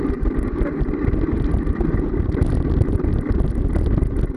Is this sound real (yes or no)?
yes